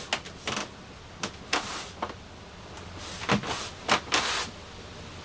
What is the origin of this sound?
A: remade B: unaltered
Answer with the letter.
B